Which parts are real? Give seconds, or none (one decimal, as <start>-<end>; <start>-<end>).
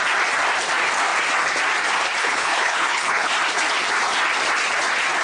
0.0-2.2; 3.3-5.2